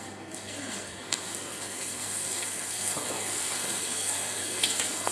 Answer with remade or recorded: remade